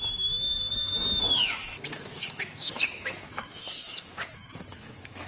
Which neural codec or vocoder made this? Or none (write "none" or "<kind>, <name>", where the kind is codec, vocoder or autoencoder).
autoencoder, DAC-VAE